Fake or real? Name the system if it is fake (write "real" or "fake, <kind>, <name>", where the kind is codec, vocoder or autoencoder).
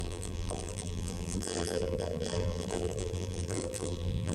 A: fake, vocoder, BigVGAN v2